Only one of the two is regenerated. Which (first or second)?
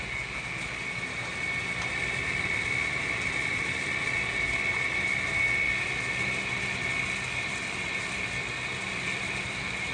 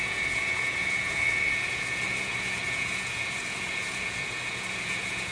second